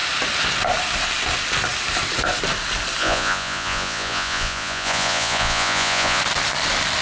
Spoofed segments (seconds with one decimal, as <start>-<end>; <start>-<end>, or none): 3.0-6.2